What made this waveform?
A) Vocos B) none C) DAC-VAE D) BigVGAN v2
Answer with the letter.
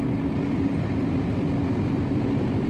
B